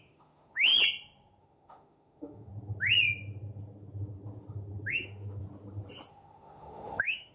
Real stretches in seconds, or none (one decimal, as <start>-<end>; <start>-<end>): 0.7-1.4; 2.5-4.9; 5.4-6.1